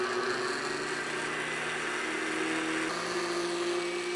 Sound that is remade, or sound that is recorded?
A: recorded